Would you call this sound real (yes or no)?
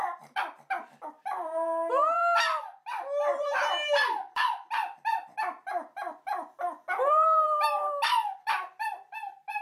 no